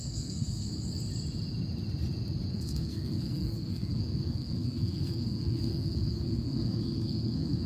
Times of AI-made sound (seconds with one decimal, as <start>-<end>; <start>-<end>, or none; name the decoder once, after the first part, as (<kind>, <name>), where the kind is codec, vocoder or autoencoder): 0.0-0.7 (codec, SNAC); 2.5-7.7